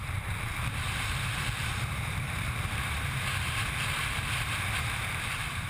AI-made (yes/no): yes